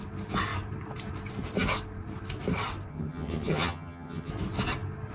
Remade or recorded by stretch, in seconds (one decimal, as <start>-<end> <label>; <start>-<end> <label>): 0.0-2.9 recorded; 2.9-4.3 remade; 4.3-5.1 recorded